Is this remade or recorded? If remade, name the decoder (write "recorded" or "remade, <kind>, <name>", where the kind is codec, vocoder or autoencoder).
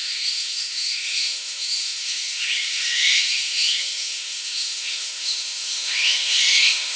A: remade, autoencoder, DAC-VAE